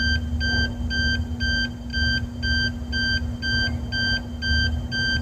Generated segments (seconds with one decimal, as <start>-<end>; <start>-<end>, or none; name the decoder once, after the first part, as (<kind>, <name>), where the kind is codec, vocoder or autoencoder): none